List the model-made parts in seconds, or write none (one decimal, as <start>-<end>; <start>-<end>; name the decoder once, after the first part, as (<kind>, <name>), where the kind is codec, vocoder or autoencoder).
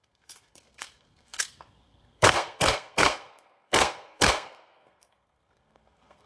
0.0-6.3 (codec, SNAC)